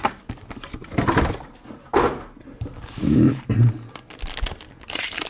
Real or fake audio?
real